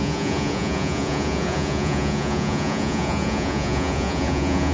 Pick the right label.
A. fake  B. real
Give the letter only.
A